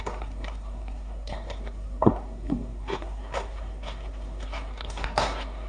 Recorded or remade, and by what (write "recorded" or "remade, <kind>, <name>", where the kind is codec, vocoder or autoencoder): remade, codec, SNAC